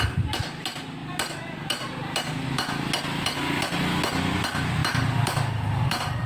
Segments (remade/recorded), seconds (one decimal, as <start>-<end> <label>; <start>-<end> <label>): 0.0-6.3 recorded